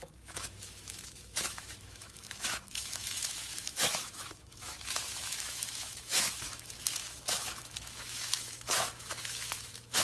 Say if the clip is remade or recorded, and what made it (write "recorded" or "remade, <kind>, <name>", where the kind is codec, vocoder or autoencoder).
remade, autoencoder, DAC-VAE